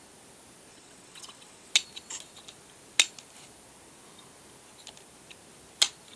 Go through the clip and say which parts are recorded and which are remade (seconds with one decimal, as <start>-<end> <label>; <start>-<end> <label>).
0.0-0.7 recorded; 0.7-1.7 remade; 1.7-6.2 recorded